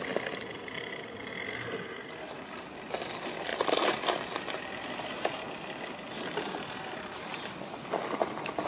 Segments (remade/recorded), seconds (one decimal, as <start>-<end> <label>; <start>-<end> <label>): 0.0-8.7 recorded